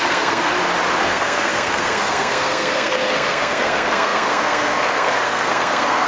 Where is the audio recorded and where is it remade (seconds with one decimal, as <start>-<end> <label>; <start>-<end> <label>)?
0.0-0.5 remade; 0.5-1.0 recorded; 1.0-6.1 remade